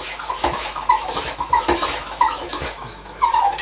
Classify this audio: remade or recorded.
remade